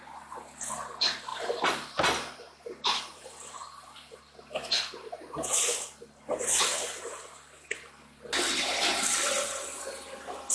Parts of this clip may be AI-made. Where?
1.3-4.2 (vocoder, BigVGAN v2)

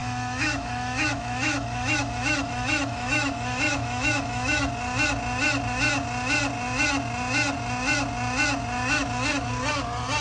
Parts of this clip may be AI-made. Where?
0.0-4.7 (autoencoder, DAC-VAE)

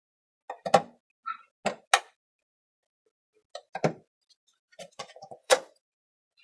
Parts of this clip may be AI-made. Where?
4.5-6.4 (vocoder, Vocos)

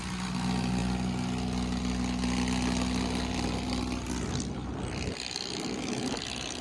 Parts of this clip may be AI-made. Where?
none

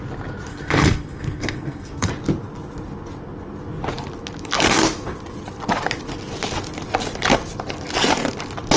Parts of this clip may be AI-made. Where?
0.5-2.1 (codec, SNAC)

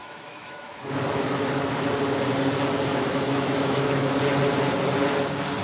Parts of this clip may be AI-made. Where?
0.0-0.8 (autoencoder, DAC-VAE); 2.9-4.2